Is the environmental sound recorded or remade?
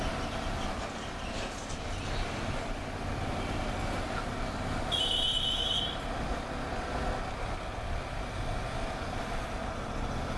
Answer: recorded